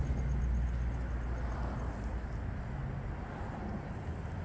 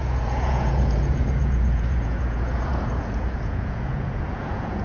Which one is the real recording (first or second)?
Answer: first